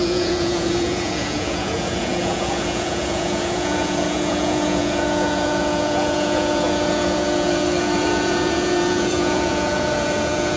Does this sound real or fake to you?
fake